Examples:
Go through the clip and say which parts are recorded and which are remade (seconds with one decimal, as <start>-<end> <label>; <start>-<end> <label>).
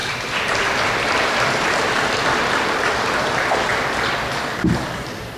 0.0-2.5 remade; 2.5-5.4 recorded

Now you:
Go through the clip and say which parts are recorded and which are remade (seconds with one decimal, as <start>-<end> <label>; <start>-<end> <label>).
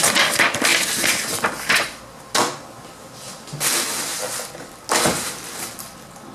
0.0-6.3 recorded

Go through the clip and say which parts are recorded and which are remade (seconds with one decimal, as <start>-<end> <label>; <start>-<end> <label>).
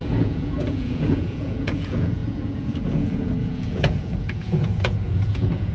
0.0-5.7 remade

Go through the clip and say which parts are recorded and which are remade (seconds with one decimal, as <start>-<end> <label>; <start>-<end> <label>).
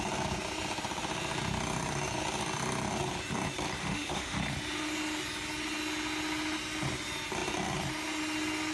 0.0-3.8 recorded; 3.8-4.4 remade; 4.4-8.7 recorded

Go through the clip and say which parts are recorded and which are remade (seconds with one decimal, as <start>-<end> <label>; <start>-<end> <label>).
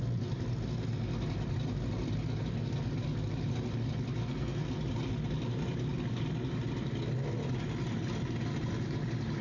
0.0-4.2 recorded; 4.2-4.7 remade; 4.7-9.4 recorded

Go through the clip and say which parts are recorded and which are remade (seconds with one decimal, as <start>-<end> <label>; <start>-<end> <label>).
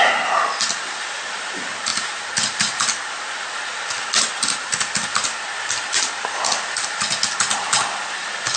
0.0-8.6 recorded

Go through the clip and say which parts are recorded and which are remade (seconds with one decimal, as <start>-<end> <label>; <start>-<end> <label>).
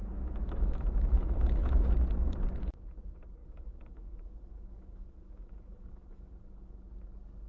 0.0-1.9 remade; 1.9-3.4 recorded; 3.4-6.3 remade; 6.3-7.5 recorded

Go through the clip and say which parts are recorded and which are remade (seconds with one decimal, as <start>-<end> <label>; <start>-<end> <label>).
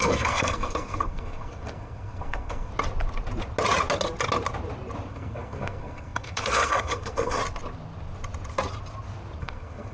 0.0-2.7 remade; 2.7-5.1 recorded; 5.1-7.4 remade; 7.4-9.4 recorded; 9.4-9.9 remade